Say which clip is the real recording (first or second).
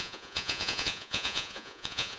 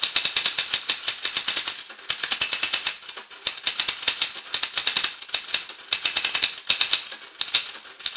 second